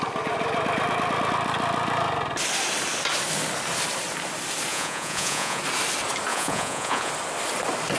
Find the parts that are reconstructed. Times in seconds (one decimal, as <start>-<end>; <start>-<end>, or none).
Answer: 4.7-5.6; 6.3-7.1